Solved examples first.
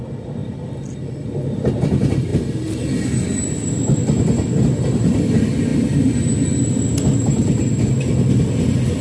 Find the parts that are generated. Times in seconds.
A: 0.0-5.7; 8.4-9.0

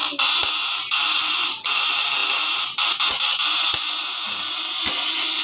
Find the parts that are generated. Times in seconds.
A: none

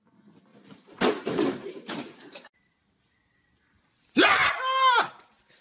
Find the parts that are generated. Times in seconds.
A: 0.5-3.9

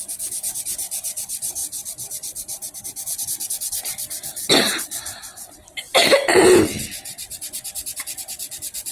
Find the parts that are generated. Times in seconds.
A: 1.6-2.8

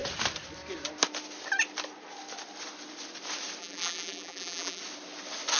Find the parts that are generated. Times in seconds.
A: 3.6-4.8

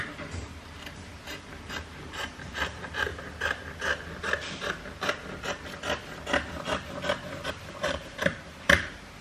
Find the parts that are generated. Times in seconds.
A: 0.0-3.1; 7.5-9.2

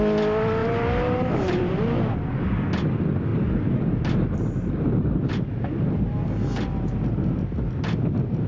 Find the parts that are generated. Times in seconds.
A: 0.6-1.8; 3.3-5.3